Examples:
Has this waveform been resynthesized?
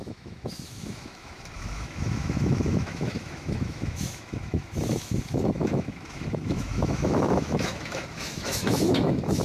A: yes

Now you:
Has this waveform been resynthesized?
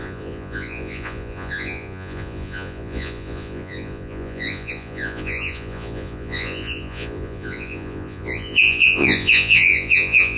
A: yes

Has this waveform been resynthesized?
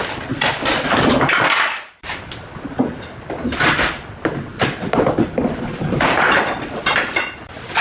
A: no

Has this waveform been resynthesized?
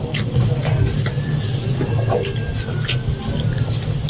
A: no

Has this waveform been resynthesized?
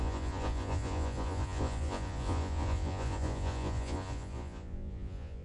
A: yes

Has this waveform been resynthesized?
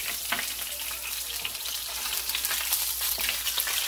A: no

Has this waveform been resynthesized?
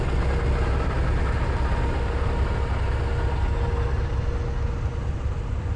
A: no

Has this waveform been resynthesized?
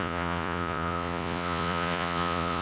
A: yes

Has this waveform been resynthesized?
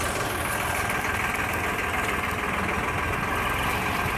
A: no